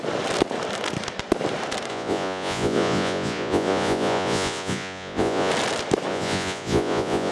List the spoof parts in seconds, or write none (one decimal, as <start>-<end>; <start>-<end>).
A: 1.9-5.5; 6.1-7.3